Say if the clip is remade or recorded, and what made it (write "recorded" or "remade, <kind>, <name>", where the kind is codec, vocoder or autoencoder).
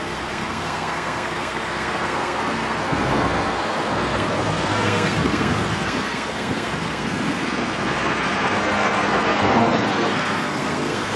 remade, codec, SNAC